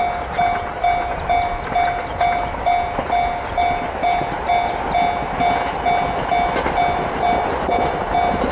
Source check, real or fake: real